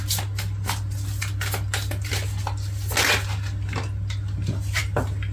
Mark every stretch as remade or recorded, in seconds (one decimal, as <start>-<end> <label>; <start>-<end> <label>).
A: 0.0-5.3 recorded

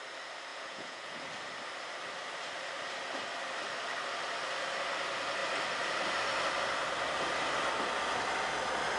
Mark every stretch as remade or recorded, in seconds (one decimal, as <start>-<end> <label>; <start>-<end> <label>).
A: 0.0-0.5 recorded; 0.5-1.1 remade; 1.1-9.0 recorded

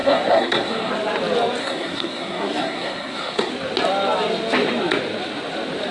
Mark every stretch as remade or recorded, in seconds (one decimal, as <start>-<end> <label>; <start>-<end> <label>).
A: 0.0-0.9 remade; 0.9-1.6 recorded; 1.6-3.5 remade; 3.5-5.9 recorded

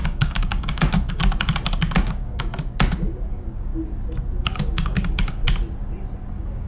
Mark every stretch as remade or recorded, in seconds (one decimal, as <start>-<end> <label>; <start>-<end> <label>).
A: 0.0-1.2 remade; 1.2-2.0 recorded; 2.0-2.5 remade; 2.5-3.3 recorded; 3.3-3.7 remade; 3.7-4.4 recorded; 4.4-5.4 remade; 5.4-6.3 recorded; 6.3-6.7 remade

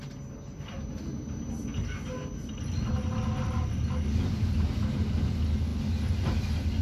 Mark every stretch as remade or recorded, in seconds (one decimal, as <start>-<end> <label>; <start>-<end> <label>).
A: 0.0-6.8 recorded

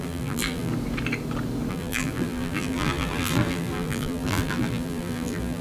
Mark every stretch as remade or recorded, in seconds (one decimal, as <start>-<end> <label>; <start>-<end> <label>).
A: 0.0-0.7 remade; 0.7-1.7 recorded; 1.7-5.6 remade

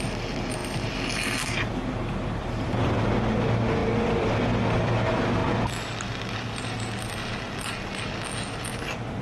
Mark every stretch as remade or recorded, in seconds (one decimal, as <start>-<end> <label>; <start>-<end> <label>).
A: 0.0-0.6 recorded; 0.6-3.0 remade; 3.0-3.8 recorded; 3.8-4.3 remade; 4.3-9.2 recorded